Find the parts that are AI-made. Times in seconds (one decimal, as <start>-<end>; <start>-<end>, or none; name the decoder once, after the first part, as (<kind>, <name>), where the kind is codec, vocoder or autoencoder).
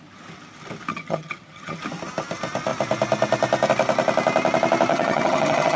0.9-1.8 (vocoder, HiFi-GAN); 4.9-5.8